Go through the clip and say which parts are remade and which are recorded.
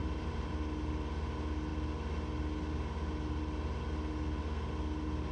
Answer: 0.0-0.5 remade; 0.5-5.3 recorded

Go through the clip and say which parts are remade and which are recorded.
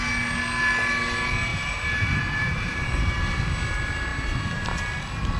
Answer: 0.0-1.5 recorded; 1.5-3.2 remade; 3.2-5.4 recorded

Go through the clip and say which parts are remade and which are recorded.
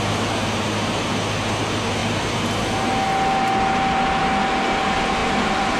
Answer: 0.0-5.2 recorded; 5.2-5.8 remade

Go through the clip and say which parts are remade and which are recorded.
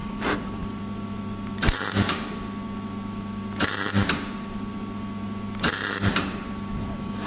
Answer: 0.0-0.8 remade; 0.8-7.3 recorded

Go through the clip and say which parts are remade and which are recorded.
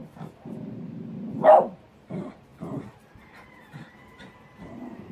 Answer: 0.0-2.0 recorded; 2.0-5.1 remade